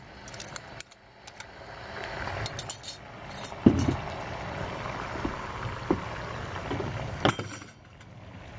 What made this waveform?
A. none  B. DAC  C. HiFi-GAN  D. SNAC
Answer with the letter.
A